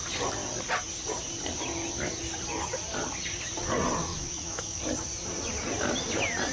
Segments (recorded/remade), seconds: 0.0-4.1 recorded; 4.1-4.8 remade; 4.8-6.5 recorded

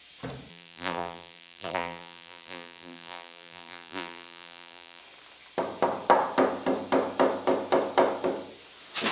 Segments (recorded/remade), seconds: 0.0-0.5 recorded; 0.5-5.0 remade; 5.0-9.1 recorded

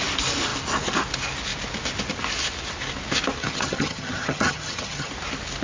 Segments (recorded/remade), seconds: 0.0-3.4 recorded; 3.4-5.1 remade; 5.1-5.6 recorded